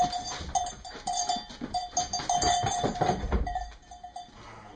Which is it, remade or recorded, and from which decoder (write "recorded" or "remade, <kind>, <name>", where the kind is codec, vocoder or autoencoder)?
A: recorded